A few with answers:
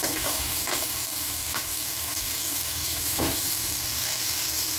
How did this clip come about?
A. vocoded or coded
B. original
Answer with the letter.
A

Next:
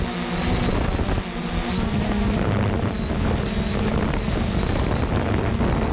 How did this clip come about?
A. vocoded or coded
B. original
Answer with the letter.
B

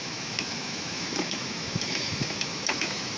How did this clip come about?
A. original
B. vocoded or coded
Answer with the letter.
B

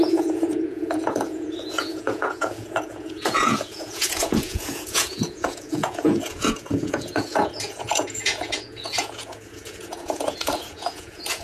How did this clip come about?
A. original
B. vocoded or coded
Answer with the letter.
B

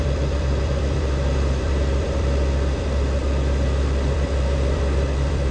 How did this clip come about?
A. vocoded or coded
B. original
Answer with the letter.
A